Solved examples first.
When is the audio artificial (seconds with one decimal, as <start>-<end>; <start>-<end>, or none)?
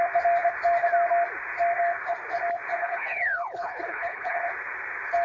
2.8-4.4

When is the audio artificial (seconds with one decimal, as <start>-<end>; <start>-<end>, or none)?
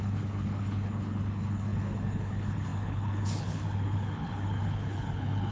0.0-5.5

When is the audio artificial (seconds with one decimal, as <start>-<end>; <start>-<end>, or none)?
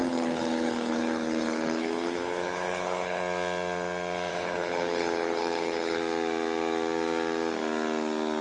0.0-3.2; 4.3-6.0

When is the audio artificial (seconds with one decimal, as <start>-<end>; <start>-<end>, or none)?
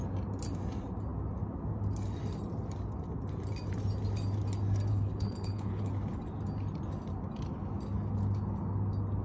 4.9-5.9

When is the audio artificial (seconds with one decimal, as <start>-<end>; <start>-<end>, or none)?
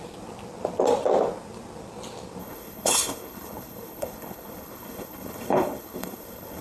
2.4-6.6